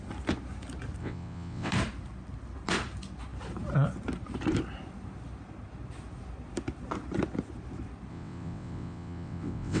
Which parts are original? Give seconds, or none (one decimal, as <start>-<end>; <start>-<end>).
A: 0.0-1.0; 1.7-8.1